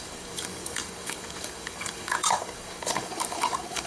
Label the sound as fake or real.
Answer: fake